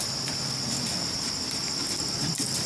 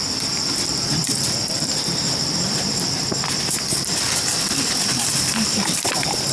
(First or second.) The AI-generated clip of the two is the second